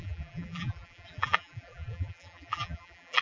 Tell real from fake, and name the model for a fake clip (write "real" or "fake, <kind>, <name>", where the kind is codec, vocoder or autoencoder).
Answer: fake, vocoder, BigVGAN v2